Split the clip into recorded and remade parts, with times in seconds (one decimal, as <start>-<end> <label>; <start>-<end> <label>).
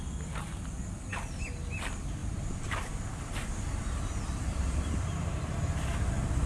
0.0-2.2 recorded; 2.2-6.1 remade; 6.1-6.5 recorded